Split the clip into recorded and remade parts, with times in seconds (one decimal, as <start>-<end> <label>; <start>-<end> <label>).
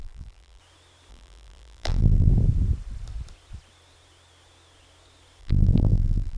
0.0-0.6 remade; 0.6-1.1 recorded; 1.1-2.3 remade; 2.3-5.4 recorded; 5.4-6.4 remade